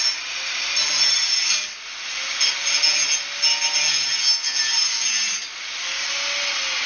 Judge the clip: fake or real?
real